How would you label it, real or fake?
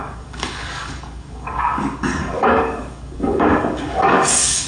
fake